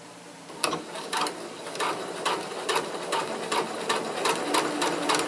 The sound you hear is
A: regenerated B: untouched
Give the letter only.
B